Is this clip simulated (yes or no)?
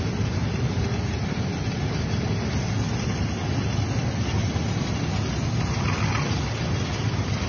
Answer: no